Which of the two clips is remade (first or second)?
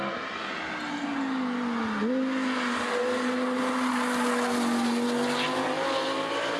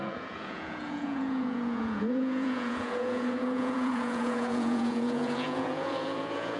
second